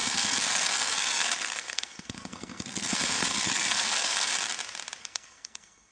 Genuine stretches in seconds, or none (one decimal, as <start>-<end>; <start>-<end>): 4.3-5.0